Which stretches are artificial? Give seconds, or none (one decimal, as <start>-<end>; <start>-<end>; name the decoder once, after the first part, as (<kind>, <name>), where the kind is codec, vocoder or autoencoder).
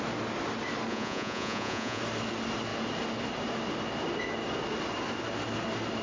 0.9-2.0 (vocoder, Vocos)